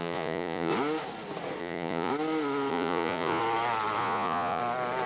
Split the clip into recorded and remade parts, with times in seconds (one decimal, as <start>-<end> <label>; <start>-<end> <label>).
0.0-0.7 remade; 0.7-1.6 recorded; 1.6-2.1 remade; 2.1-2.7 recorded; 2.7-3.4 remade; 3.4-4.0 recorded; 4.0-4.6 remade; 4.6-5.1 recorded